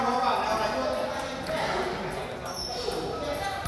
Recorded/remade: recorded